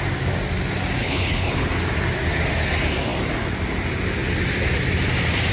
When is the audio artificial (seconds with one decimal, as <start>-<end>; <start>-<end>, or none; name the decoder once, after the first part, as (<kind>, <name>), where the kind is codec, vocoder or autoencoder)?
1.0-1.7 (codec, HILCodec)